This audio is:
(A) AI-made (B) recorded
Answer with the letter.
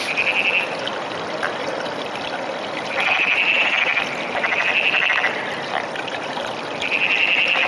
B